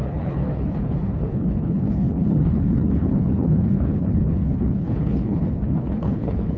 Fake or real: fake